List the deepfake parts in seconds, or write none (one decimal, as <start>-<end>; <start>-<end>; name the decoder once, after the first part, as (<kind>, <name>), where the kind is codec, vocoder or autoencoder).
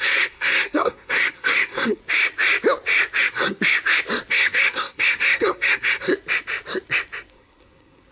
0.0-2.0 (codec, SNAC); 3.2-3.6; 4.3-6.1; 7.3-8.1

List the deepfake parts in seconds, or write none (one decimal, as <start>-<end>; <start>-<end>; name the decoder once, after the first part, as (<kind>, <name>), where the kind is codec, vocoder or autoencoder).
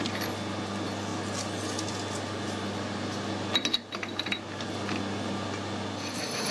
none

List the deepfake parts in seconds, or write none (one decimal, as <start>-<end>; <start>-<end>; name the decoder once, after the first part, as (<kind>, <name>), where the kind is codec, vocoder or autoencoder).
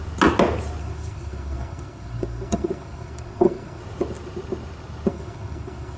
0.8-3.8 (codec, SNAC); 5.1-6.0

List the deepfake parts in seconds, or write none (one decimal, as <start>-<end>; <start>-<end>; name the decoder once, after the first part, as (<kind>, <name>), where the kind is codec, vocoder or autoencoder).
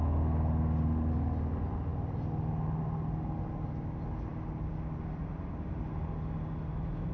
none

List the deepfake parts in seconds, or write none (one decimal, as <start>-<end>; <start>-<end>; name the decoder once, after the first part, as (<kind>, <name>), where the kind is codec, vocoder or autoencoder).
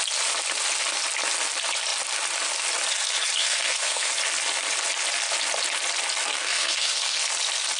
3.4-4.1 (codec, SNAC); 6.3-7.2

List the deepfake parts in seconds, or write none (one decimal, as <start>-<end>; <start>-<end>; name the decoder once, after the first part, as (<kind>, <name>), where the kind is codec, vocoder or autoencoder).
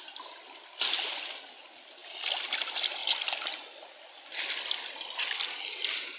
none